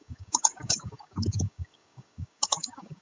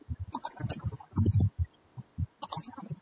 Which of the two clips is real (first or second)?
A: second